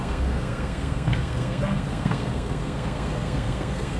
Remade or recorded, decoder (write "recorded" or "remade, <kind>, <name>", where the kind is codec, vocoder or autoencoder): remade, codec, SNAC